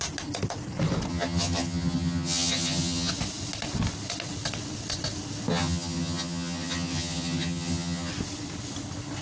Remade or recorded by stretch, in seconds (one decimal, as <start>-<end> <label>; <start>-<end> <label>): 0.0-1.1 recorded; 1.1-3.1 remade; 3.1-5.5 recorded; 5.5-8.1 remade; 8.1-9.2 recorded